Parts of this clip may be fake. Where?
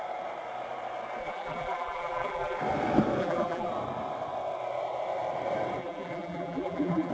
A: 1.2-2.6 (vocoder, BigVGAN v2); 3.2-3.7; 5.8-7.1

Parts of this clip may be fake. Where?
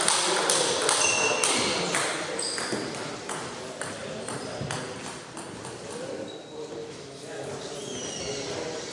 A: 6.8-7.5 (autoencoder, DAC-VAE)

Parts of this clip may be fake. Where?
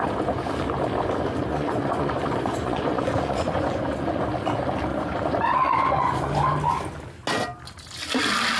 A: 1.5-4.2 (vocoder, Vocos); 4.9-6.3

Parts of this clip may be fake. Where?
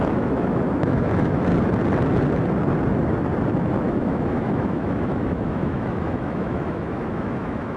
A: 0.0-1.5 (autoencoder, DAC-VAE); 3.9-7.8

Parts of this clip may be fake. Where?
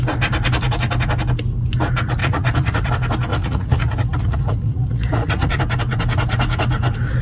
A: 2.2-2.9 (vocoder, Vocos); 3.3-5.6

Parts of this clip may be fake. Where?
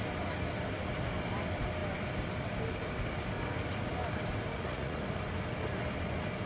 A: 4.5-5.0 (vocoder, Vocos)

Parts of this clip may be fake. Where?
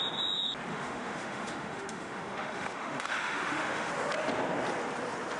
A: 0.7-3.9 (autoencoder, DAC-VAE)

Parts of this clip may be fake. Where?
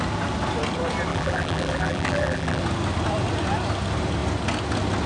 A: 1.1-2.6 (vocoder, BigVGAN v2)